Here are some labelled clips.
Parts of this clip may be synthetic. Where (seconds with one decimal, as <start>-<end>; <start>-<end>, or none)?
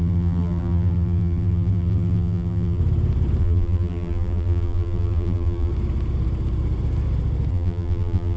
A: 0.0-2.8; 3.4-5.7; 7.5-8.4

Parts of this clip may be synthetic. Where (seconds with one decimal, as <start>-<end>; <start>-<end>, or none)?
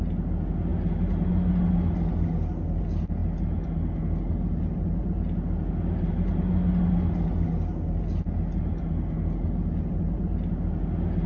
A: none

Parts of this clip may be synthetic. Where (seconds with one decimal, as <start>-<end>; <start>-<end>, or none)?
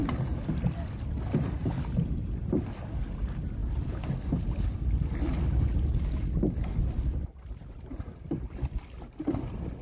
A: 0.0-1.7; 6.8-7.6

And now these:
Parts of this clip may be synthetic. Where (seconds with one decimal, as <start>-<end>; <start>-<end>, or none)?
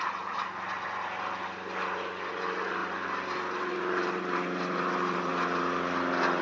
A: 2.8-5.3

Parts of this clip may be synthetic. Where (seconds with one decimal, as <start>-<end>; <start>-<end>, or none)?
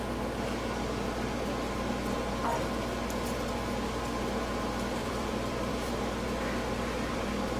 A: 5.0-6.0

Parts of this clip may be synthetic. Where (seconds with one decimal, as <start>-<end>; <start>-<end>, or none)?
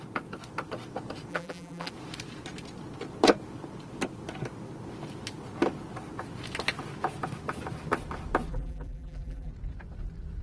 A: 1.3-1.9; 8.5-9.5